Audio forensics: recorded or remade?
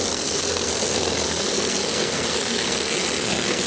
remade